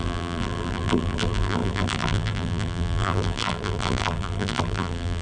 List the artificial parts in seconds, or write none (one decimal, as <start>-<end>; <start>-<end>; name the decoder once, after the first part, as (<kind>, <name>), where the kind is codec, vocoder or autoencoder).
0.0-5.2 (vocoder, BigVGAN v2)